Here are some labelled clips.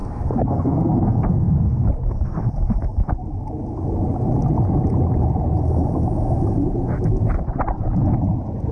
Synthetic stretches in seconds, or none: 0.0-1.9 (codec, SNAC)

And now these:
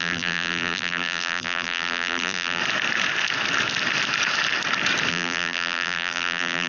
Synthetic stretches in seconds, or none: 0.0-2.6 (vocoder, BigVGAN v2); 5.1-6.7